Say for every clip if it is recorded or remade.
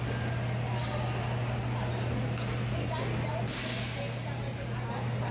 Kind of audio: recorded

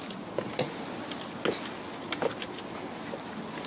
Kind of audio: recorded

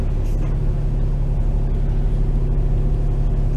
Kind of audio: recorded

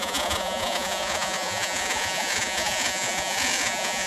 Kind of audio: remade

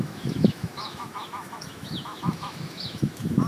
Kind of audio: remade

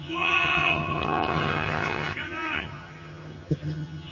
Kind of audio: remade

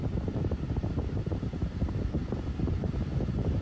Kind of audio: remade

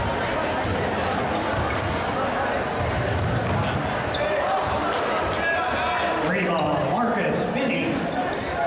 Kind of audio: recorded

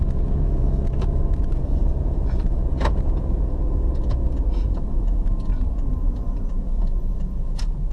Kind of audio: remade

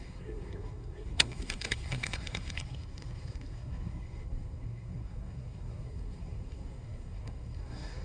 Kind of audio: remade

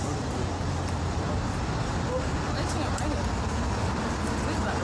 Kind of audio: recorded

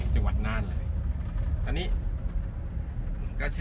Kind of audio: recorded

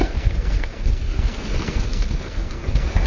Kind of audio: remade